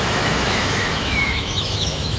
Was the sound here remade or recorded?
remade